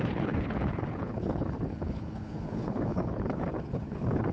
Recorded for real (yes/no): no